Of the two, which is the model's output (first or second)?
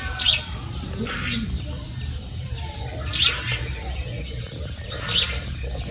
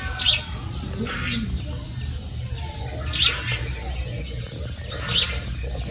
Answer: first